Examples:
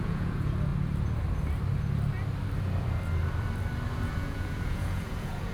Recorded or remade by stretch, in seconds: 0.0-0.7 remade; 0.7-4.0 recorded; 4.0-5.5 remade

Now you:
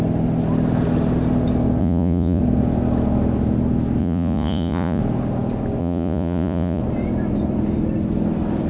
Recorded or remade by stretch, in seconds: 0.0-1.8 recorded; 1.8-2.4 remade; 2.4-4.0 recorded; 4.0-5.0 remade; 5.0-5.8 recorded; 5.8-6.8 remade; 6.8-8.7 recorded

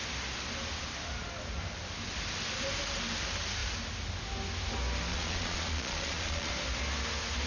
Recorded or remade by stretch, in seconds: 0.0-5.1 recorded; 5.1-6.5 remade; 6.5-7.5 recorded

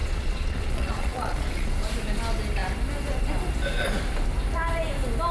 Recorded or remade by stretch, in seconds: 0.0-1.7 remade; 1.7-5.3 recorded

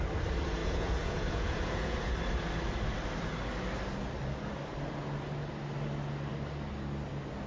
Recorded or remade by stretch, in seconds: 0.0-0.6 recorded; 0.6-2.1 remade; 2.1-7.5 recorded

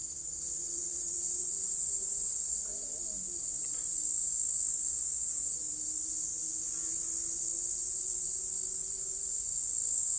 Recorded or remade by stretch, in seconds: 0.0-2.6 remade; 2.6-4.9 recorded; 4.9-5.6 remade; 5.6-10.2 recorded

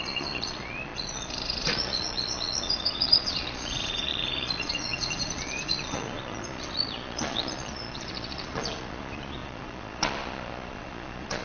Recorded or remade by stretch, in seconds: 0.0-11.4 remade

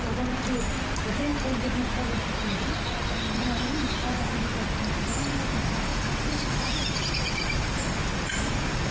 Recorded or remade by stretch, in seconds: 0.0-8.9 recorded